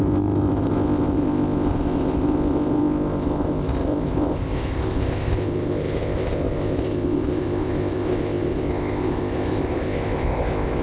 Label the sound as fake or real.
fake